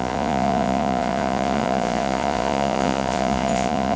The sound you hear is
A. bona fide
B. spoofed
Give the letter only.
B